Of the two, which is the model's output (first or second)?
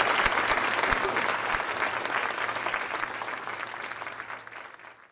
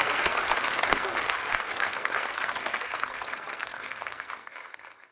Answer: second